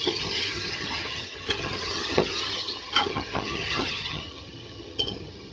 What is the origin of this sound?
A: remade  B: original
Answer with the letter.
A